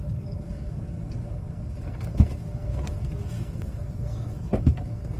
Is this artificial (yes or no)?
yes